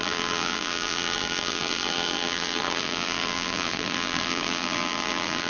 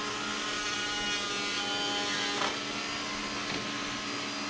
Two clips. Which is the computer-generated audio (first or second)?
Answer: first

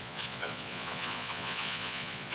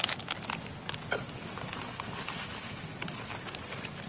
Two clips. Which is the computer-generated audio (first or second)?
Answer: first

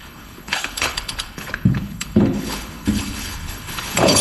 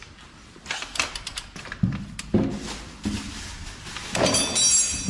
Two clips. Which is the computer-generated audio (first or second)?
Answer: first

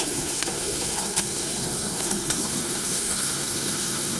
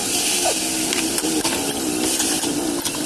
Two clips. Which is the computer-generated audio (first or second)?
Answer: first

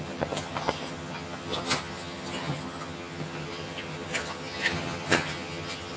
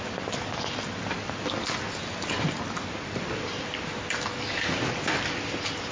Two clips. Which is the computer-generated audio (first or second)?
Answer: first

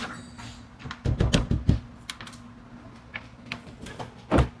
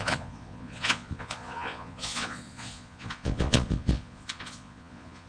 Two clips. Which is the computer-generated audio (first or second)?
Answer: second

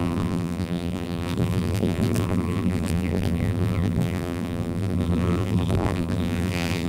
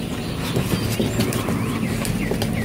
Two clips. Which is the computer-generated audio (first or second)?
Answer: first